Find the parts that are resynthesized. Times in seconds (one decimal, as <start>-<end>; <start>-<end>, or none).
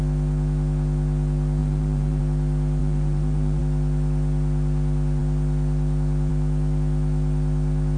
1.6-2.2; 2.8-3.6